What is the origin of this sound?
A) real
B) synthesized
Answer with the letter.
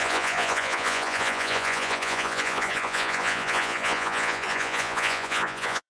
B